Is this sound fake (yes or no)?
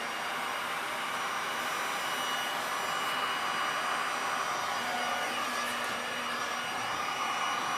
no